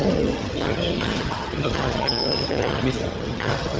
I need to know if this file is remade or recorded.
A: remade